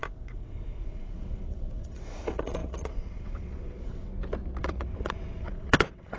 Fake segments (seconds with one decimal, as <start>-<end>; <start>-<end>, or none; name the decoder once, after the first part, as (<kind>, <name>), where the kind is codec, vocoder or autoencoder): 0.0-4.1 (vocoder, WaveNeXt); 4.6-6.2